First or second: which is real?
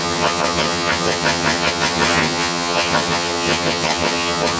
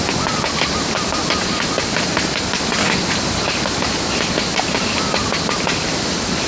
second